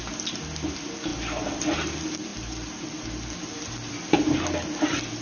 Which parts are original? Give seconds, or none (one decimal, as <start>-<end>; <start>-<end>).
0.0-1.1; 1.6-5.2